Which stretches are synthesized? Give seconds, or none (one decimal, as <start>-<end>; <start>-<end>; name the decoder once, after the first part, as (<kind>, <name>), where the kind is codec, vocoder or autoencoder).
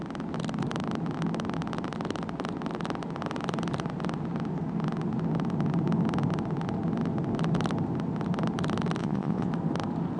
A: 9.0-9.5 (vocoder, Vocos)